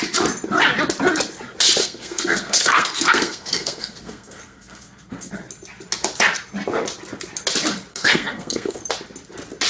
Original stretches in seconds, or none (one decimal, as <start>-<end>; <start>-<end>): 0.0-1.8; 5.3-7.9; 8.8-9.7